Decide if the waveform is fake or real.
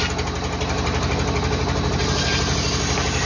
real